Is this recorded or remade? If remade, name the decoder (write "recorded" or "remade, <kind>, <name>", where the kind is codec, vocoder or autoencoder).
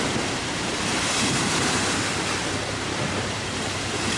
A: remade, vocoder, BigVGAN v2